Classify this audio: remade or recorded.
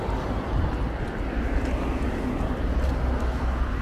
recorded